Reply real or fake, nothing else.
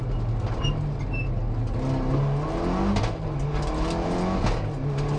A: real